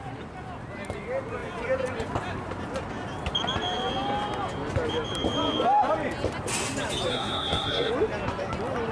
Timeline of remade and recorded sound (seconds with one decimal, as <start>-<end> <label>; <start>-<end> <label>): 0.0-7.1 recorded; 7.1-7.9 remade; 7.9-8.9 recorded